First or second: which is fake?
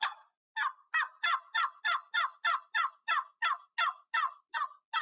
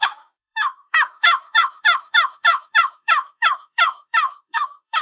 second